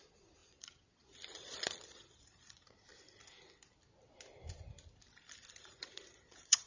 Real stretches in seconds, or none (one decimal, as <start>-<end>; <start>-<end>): 2.9-5.6